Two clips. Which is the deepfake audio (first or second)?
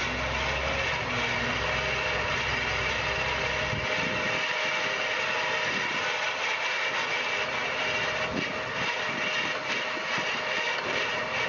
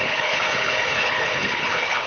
second